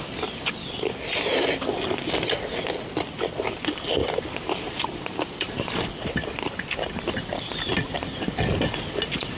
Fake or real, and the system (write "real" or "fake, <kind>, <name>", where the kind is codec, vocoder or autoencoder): real